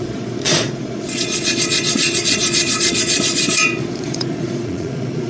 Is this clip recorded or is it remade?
remade